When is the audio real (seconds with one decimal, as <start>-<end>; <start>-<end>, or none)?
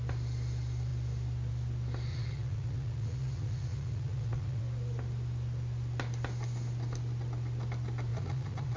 0.0-2.1; 4.6-8.1